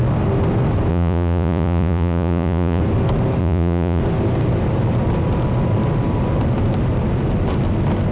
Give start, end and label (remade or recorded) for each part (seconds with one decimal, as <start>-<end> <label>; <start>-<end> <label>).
0.0-0.9 recorded; 0.9-2.8 remade; 2.8-3.4 recorded; 3.4-4.0 remade; 4.0-8.1 recorded